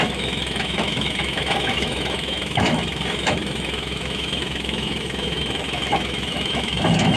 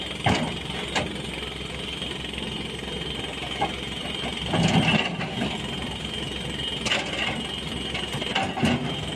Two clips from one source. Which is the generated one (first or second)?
first